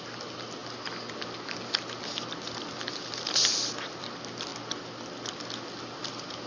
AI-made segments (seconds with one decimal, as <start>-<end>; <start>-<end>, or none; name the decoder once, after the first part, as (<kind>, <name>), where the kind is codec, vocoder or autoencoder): none